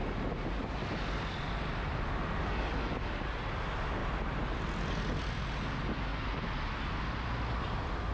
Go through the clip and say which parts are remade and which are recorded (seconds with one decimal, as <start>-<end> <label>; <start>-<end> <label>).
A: 0.0-8.1 recorded